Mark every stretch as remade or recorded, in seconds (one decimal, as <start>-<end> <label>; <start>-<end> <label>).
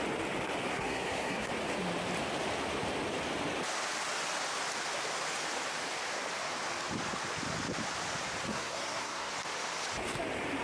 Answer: 0.0-0.7 recorded; 0.7-1.5 remade; 1.5-8.5 recorded; 8.5-9.3 remade; 9.3-10.6 recorded